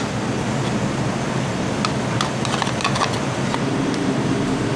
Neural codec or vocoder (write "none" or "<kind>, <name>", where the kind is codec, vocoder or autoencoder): none